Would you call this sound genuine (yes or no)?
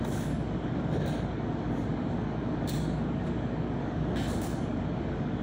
no